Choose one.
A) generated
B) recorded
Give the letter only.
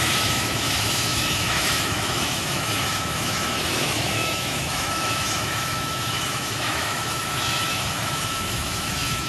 A